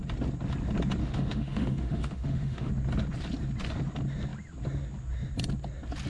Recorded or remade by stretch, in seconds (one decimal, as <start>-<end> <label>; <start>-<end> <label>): 0.0-1.0 recorded; 1.0-2.7 remade; 2.7-6.1 recorded

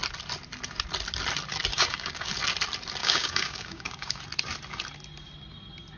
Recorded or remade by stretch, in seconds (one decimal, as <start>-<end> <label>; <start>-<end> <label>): 0.0-1.7 recorded; 1.7-2.3 remade; 2.3-3.0 recorded; 3.0-4.2 remade; 4.2-6.0 recorded